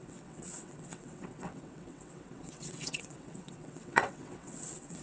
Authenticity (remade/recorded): remade